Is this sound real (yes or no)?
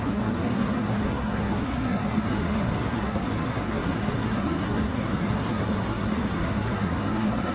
no